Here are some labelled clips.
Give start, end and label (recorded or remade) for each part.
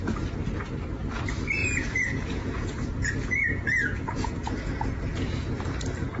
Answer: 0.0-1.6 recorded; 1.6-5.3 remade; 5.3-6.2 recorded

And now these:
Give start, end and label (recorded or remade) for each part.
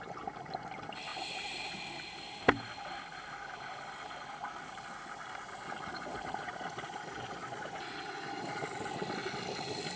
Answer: 0.0-5.9 recorded; 5.9-8.6 remade; 8.6-10.0 recorded